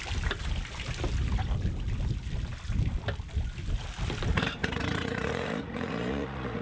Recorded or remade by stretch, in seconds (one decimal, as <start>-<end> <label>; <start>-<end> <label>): 0.0-4.6 recorded; 4.6-6.6 remade